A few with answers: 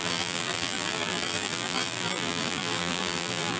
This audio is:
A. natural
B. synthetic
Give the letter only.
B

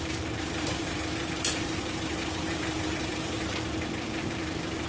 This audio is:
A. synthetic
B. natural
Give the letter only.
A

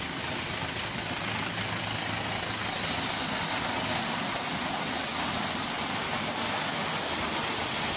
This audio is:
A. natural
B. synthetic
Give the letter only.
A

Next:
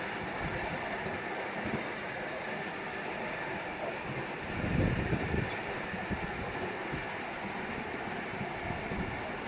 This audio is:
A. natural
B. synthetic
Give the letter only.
A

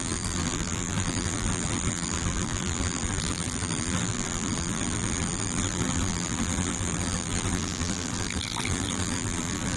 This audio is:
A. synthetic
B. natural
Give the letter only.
A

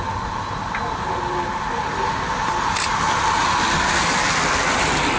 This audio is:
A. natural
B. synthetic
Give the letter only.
A